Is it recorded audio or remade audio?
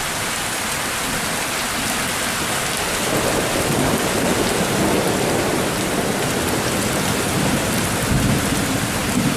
recorded